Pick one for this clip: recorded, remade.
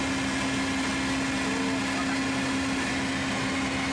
recorded